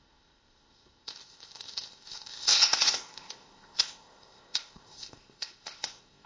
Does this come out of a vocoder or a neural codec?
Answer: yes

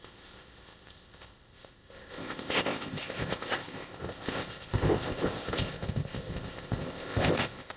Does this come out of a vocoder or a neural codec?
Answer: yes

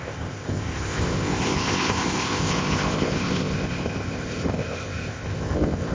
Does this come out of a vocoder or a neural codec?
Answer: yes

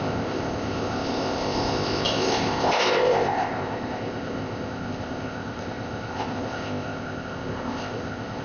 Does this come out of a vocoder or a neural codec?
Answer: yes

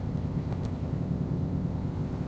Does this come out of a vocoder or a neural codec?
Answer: yes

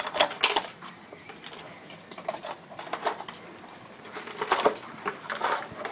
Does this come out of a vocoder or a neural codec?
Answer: no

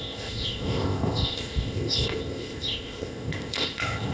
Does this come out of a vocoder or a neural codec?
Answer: yes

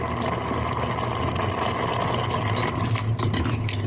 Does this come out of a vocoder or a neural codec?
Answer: no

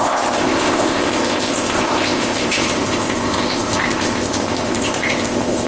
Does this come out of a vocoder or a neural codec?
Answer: yes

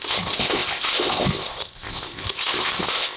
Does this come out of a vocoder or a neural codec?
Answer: yes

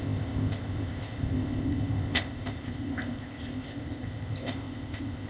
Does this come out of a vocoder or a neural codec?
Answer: yes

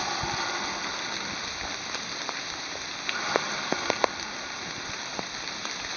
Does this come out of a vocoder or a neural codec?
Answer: no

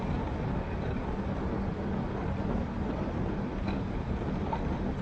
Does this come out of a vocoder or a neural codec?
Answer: no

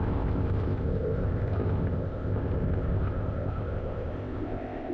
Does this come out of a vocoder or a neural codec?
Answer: yes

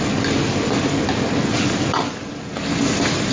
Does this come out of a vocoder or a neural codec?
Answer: no